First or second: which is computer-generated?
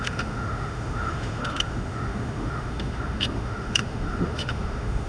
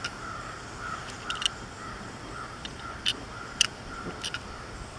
first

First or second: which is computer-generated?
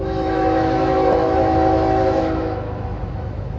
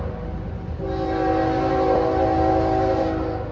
first